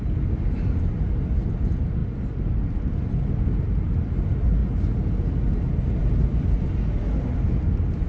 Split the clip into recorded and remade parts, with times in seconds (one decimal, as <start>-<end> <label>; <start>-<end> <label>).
0.0-8.1 recorded